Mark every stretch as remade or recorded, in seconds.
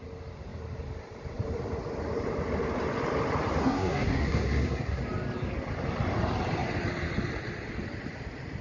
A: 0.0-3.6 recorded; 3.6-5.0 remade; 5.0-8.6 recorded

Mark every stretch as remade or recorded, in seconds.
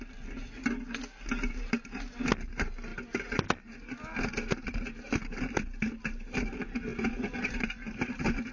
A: 0.0-8.5 recorded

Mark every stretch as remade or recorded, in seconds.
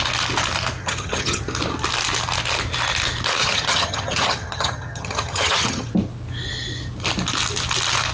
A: 0.0-0.8 recorded; 0.8-1.4 remade; 1.4-3.4 recorded; 3.4-5.9 remade; 5.9-8.1 recorded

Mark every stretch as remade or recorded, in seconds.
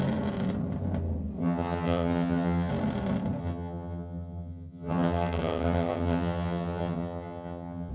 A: 0.0-1.4 recorded; 1.4-2.7 remade; 2.7-3.4 recorded; 3.4-7.9 remade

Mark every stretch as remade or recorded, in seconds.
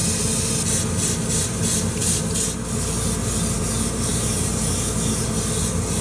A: 0.0-4.1 recorded; 4.1-4.7 remade; 4.7-6.0 recorded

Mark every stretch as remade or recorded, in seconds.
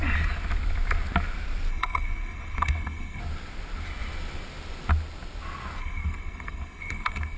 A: 0.0-1.7 recorded; 1.7-3.2 remade; 3.2-5.8 recorded; 5.8-7.4 remade